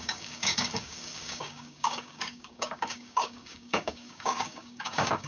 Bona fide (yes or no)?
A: no